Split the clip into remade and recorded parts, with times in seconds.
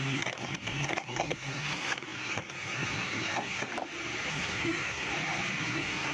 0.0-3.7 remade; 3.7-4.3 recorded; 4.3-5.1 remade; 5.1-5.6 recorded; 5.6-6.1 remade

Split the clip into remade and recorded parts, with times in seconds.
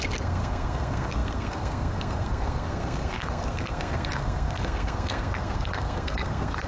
0.0-6.7 remade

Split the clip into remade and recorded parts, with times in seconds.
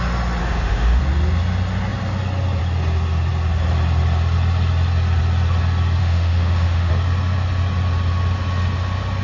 0.0-0.4 recorded; 0.4-1.0 remade; 1.0-6.0 recorded; 6.0-6.9 remade; 6.9-9.2 recorded